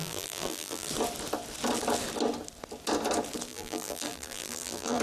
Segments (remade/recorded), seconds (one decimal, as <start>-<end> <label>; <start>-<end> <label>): 0.0-0.9 remade; 0.9-3.5 recorded; 3.5-5.0 remade

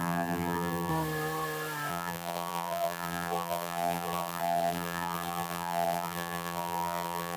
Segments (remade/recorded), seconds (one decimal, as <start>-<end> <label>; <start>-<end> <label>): 0.0-0.9 remade; 0.9-1.9 recorded; 1.9-7.4 remade